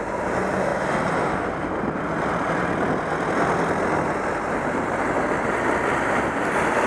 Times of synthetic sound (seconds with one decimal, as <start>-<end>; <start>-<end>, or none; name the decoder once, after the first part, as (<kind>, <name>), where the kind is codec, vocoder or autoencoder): none